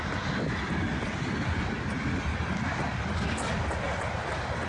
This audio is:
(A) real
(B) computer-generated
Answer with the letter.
A